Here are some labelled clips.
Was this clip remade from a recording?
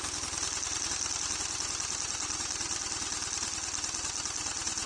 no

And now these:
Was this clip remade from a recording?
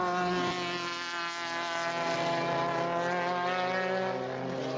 no